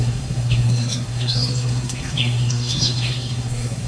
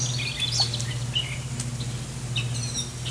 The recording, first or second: second